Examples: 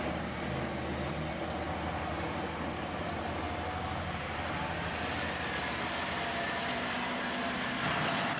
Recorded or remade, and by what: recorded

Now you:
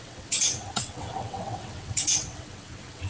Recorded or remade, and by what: remade, vocoder, WaveNeXt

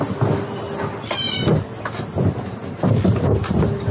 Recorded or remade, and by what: recorded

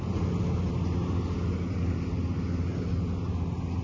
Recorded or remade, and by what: recorded